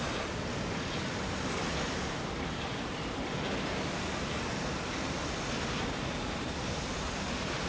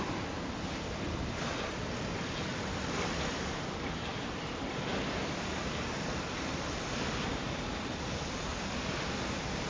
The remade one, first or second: second